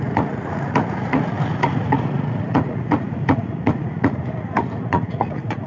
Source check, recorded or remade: remade